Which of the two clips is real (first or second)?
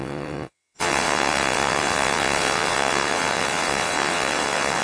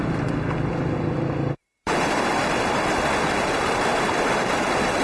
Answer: second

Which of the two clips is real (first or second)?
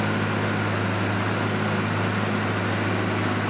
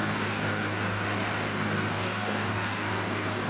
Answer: first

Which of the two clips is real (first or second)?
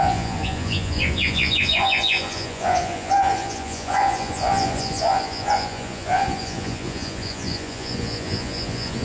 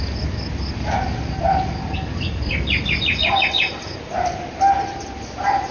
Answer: second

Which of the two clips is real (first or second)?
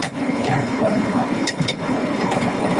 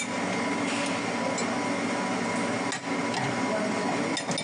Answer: second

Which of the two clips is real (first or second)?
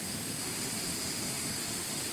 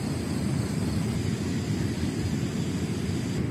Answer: second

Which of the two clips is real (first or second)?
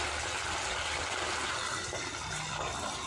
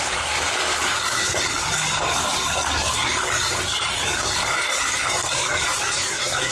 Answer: first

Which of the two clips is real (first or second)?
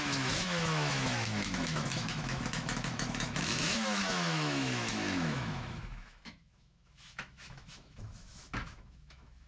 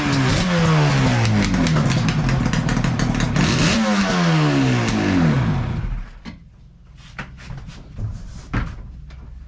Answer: second